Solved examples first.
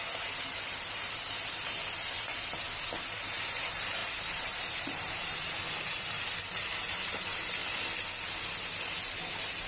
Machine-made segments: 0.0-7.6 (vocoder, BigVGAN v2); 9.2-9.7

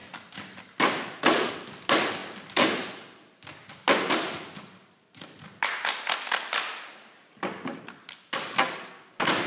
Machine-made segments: none

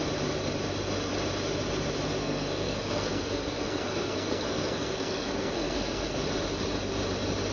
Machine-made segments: 2.2-6.2 (codec, SNAC)

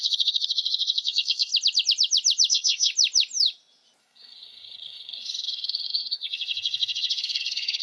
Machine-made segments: 0.0-1.5 (codec, SNAC); 2.5-2.9; 4.0-7.8

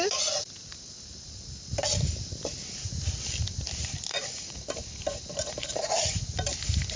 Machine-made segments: 4.1-4.6 (vocoder, Vocos)

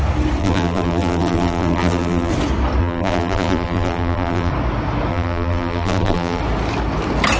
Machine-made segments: 0.4-2.3 (vocoder, BigVGAN v2); 2.8-4.5; 5.1-6.4